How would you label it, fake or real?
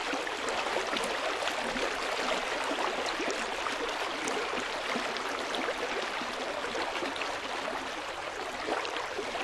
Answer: real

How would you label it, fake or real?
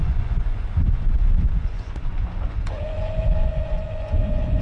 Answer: fake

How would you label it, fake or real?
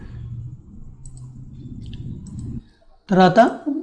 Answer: real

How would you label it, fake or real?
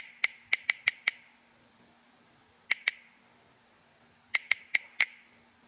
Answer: real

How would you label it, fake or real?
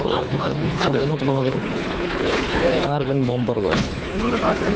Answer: fake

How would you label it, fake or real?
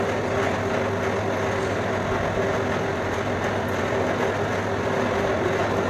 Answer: real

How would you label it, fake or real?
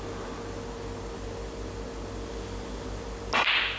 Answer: real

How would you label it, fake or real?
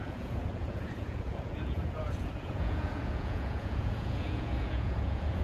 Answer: fake